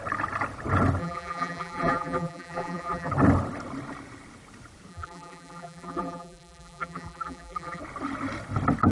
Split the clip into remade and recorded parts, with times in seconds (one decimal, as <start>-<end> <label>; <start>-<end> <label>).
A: 0.0-1.0 recorded; 1.0-3.1 remade; 3.1-4.9 recorded; 4.9-7.8 remade; 7.8-8.9 recorded